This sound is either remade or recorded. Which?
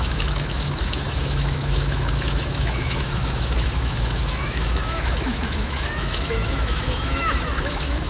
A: remade